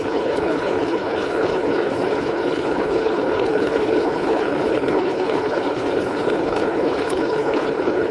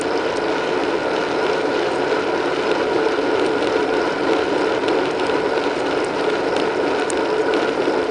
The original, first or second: second